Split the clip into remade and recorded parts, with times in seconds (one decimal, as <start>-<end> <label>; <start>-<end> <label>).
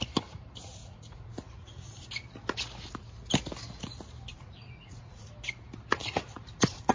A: 0.0-0.8 recorded; 0.8-2.1 remade; 2.1-4.3 recorded; 4.3-5.3 remade; 5.3-6.0 recorded; 6.0-6.9 remade